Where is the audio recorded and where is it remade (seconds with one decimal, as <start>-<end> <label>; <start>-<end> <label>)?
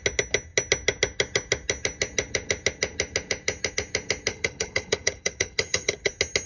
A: 0.0-4.3 recorded; 4.3-6.1 remade; 6.1-6.5 recorded